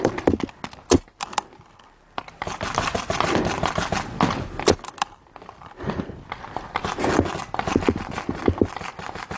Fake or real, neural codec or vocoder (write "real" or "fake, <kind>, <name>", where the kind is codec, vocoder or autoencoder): real